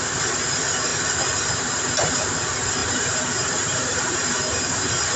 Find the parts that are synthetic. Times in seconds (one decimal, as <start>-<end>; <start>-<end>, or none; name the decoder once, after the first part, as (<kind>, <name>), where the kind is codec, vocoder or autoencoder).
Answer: 2.8-4.3 (vocoder, BigVGAN v2)